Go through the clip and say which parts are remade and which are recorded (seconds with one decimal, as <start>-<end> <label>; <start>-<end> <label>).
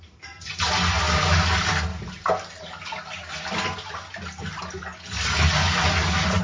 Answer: 0.0-6.4 recorded